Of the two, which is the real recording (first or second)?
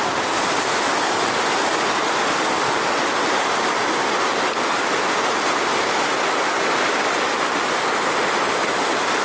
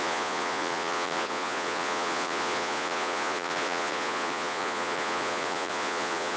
first